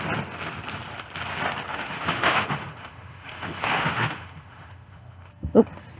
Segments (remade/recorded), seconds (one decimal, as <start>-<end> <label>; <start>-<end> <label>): 0.0-1.7 recorded; 1.7-5.3 remade; 5.3-6.0 recorded